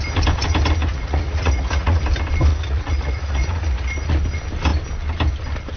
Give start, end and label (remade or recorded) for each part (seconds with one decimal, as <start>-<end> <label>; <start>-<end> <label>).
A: 0.0-0.9 recorded; 0.9-2.0 remade; 2.0-2.5 recorded; 2.5-4.1 remade; 4.1-5.8 recorded